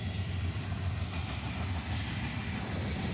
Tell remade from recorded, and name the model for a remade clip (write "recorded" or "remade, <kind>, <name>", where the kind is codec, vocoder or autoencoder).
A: recorded